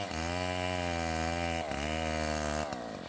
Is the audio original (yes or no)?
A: yes